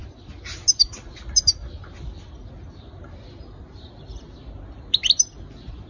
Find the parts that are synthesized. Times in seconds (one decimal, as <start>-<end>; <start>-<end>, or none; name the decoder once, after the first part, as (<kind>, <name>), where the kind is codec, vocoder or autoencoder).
none